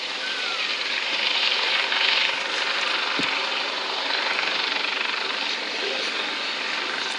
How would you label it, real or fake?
fake